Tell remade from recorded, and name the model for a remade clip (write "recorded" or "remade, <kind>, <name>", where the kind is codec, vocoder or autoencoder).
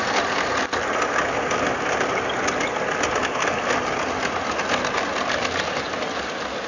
recorded